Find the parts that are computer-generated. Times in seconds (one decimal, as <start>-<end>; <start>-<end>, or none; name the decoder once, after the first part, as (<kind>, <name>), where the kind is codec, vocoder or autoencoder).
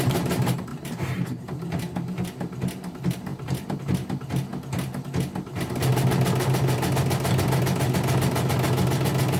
0.7-1.4 (vocoder, BigVGAN v2); 3.3-3.8